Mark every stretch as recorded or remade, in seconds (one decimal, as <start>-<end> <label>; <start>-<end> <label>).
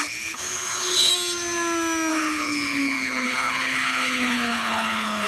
0.0-1.1 remade; 1.1-2.1 recorded; 2.1-5.3 remade